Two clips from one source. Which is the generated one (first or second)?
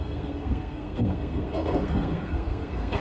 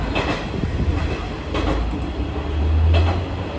first